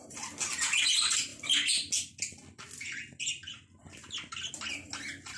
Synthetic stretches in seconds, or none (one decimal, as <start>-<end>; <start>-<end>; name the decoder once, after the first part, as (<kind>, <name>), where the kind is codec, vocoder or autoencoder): none